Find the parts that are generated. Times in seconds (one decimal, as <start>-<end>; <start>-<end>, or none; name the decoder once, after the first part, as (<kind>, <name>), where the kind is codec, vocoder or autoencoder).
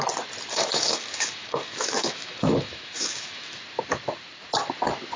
0.5-3.6 (autoencoder, DAC-VAE)